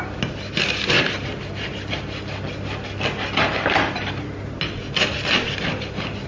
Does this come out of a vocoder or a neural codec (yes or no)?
no